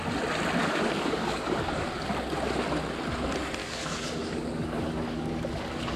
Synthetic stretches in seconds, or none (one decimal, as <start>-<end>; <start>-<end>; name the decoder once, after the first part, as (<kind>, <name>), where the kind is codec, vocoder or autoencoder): 0.6-2.1 (codec, DAC); 3.6-6.0

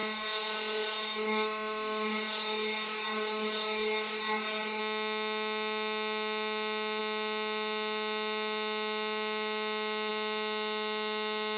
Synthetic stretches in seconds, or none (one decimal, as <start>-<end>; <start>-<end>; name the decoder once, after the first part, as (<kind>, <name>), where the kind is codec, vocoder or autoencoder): 0.0-4.8 (codec, DAC)

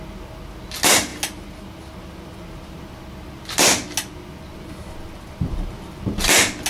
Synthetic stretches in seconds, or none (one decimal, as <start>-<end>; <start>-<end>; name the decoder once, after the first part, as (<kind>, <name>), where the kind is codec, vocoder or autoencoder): none

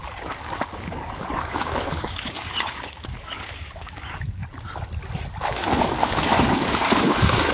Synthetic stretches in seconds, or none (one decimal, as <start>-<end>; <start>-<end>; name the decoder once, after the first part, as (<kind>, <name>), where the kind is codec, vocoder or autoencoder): 0.0-4.4 (codec, DAC); 5.5-7.5